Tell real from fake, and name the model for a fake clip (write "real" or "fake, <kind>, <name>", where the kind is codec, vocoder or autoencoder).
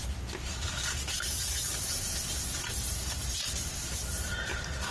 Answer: real